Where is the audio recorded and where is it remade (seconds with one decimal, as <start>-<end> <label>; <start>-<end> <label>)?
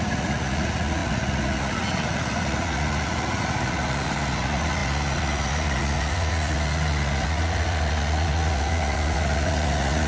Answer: 0.0-10.1 remade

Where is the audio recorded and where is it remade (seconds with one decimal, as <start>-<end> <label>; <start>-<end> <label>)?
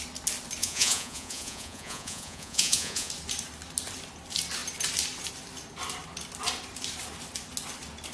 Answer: 0.0-0.6 recorded; 0.6-3.1 remade; 3.1-8.1 recorded